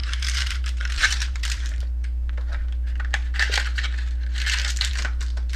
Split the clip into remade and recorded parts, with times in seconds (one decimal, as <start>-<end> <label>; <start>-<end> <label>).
0.0-1.8 remade; 1.8-5.6 recorded